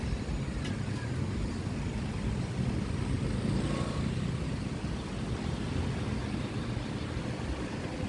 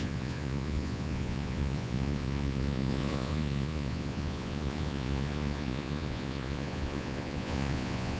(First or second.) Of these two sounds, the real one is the first